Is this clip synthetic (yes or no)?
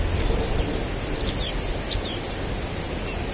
no